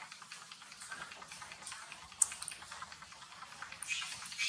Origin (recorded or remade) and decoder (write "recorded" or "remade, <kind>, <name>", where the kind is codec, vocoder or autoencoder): recorded